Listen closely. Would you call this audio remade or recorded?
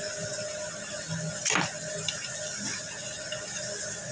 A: recorded